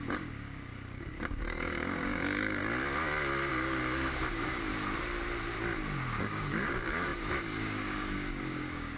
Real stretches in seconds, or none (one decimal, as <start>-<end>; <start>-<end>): 2.6-3.5; 4.7-6.2